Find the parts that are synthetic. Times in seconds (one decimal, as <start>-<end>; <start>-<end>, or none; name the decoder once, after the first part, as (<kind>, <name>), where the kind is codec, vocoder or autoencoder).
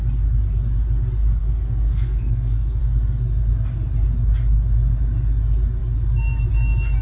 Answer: 1.4-2.8 (codec, SNAC)